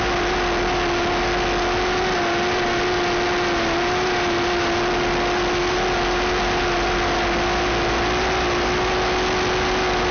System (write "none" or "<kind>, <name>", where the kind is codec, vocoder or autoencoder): none